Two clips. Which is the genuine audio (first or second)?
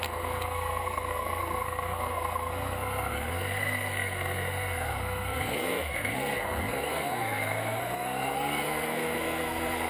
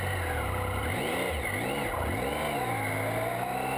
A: second